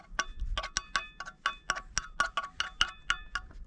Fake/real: real